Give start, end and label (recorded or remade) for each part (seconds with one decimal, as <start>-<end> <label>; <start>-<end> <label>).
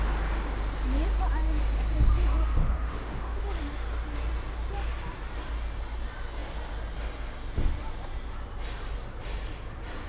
0.0-2.6 recorded; 2.6-3.4 remade; 3.4-10.1 recorded